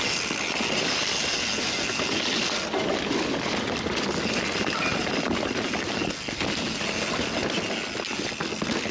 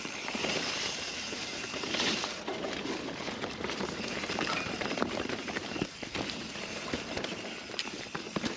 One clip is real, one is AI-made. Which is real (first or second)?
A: first